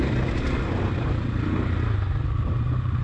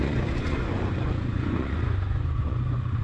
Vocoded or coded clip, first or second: second